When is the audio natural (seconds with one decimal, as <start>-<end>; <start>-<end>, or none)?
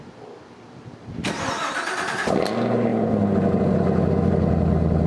0.0-5.1